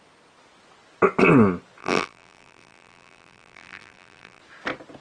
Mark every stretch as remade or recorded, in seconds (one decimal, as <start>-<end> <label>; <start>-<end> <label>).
0.0-1.8 recorded; 1.8-4.4 remade; 4.4-5.0 recorded